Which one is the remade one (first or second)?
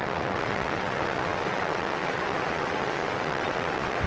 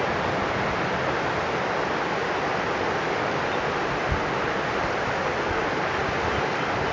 first